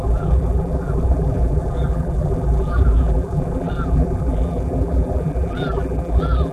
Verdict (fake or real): fake